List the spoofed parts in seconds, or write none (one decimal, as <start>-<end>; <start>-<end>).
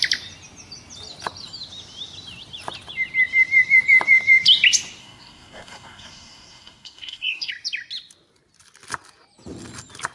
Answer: 5.0-7.5